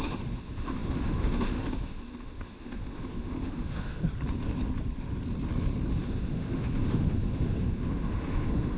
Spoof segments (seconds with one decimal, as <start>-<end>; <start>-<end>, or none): 0.0-4.0; 5.9-8.8

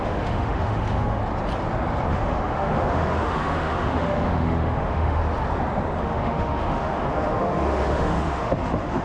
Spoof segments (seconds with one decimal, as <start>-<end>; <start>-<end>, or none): 0.0-1.2; 2.1-5.2; 6.0-9.0

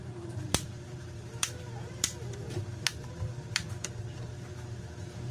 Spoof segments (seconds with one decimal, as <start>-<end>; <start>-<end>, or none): 0.0-5.3

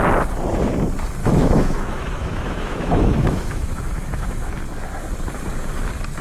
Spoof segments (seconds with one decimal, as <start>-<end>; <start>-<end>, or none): 1.2-4.5

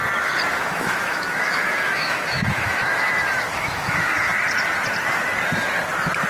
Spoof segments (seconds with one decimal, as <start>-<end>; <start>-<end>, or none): 0.5-4.3

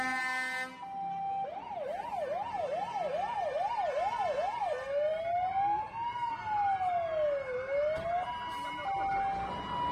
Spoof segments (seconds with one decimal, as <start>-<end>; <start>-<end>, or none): none

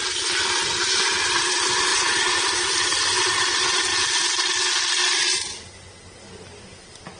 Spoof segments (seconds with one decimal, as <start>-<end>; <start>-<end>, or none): 1.9-2.8; 5.0-5.8